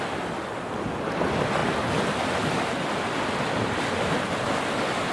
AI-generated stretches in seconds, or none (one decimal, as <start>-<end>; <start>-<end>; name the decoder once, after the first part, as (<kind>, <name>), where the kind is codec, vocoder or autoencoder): none